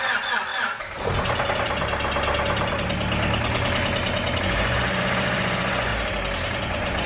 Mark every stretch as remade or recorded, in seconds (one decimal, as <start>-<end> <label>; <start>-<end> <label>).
0.0-0.5 remade; 0.5-4.4 recorded; 4.4-5.9 remade; 5.9-6.6 recorded; 6.6-7.1 remade